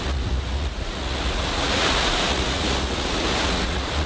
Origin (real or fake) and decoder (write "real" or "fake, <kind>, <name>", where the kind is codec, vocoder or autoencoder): fake, vocoder, Vocos